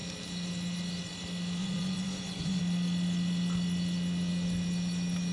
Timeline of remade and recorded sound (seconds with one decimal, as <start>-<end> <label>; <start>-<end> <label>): 0.0-1.6 recorded; 1.6-2.6 remade; 2.6-5.3 recorded